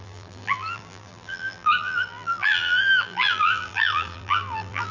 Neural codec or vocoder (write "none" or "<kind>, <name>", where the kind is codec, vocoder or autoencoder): vocoder, BigVGAN v2